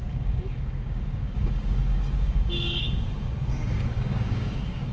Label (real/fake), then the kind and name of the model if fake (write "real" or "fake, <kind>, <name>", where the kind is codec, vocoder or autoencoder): fake, codec, DAC